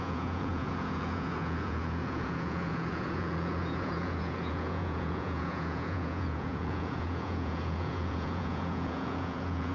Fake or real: fake